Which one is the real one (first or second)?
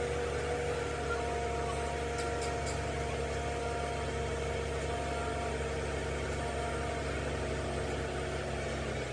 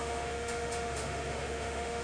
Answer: first